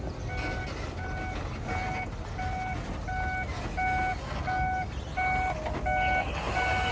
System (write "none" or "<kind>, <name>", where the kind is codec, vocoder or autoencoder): none